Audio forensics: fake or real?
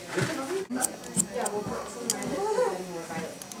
real